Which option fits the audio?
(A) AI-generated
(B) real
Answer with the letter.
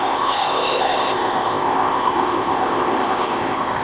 A